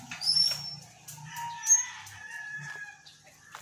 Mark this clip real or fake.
fake